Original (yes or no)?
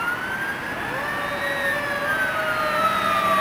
yes